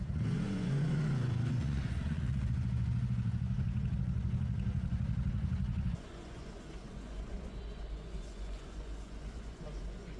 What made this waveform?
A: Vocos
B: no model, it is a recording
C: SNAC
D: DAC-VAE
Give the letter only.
A